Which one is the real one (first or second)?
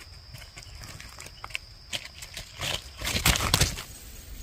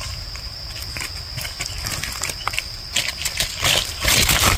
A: first